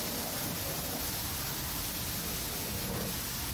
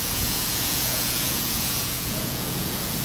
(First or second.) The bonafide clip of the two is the first